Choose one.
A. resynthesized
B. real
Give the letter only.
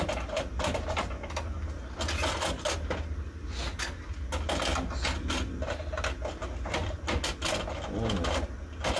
B